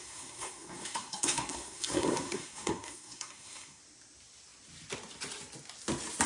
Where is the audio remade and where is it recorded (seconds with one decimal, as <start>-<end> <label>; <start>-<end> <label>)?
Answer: 0.0-3.8 remade; 3.8-6.3 recorded